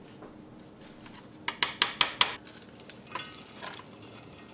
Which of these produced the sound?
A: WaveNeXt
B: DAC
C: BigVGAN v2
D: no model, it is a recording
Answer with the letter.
D